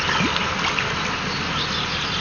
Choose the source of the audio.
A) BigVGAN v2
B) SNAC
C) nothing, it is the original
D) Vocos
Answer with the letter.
C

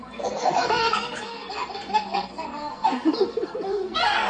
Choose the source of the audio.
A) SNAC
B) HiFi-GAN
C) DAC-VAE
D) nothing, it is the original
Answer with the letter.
A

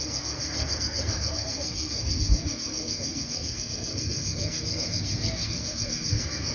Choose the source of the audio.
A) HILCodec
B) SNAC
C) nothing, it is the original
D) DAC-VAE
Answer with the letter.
B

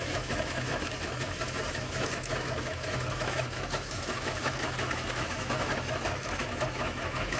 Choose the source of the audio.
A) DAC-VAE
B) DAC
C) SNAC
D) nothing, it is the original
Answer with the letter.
A